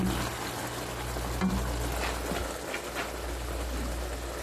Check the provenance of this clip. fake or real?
real